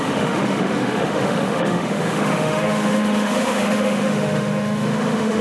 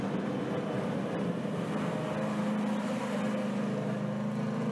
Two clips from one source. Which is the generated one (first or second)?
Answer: first